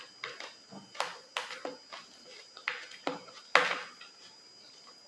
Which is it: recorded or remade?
recorded